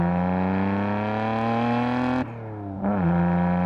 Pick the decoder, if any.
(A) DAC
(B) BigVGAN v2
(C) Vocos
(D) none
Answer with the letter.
D